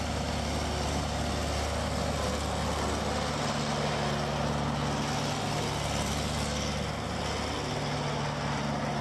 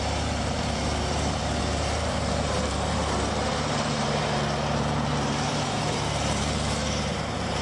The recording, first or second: first